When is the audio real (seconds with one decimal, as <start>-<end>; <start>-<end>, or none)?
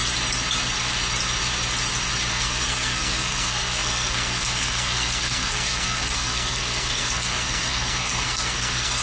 0.0-2.3